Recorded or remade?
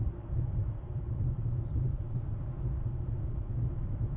remade